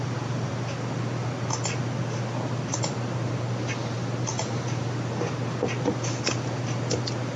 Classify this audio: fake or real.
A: real